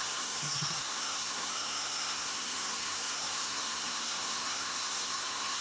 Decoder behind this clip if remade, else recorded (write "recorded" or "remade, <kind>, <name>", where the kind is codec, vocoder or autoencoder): remade, codec, SNAC